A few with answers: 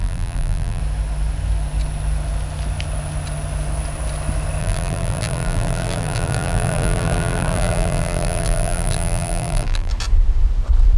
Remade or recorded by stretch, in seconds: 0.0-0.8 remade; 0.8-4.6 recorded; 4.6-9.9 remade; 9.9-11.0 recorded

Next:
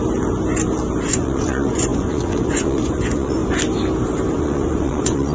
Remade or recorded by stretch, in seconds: 0.0-1.1 recorded; 1.1-3.4 remade; 3.4-4.4 recorded; 4.4-5.3 remade

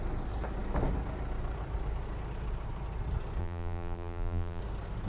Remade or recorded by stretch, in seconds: 0.0-3.4 recorded; 3.4-4.6 remade; 4.6-5.1 recorded

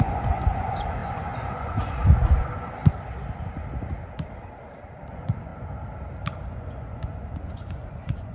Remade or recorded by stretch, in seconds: 0.0-2.9 remade; 2.9-5.1 recorded; 5.1-5.5 remade; 5.5-6.5 recorded; 6.5-8.3 remade

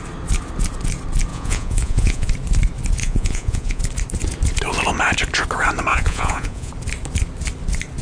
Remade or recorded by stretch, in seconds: 0.0-1.3 recorded; 1.3-2.3 remade; 2.3-3.0 recorded; 3.0-3.8 remade; 3.8-5.9 recorded; 5.9-6.7 remade; 6.7-8.0 recorded

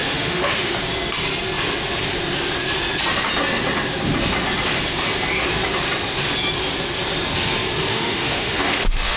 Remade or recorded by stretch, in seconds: 0.0-0.8 remade; 0.8-7.9 recorded; 7.9-9.2 remade